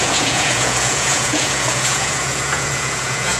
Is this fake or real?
fake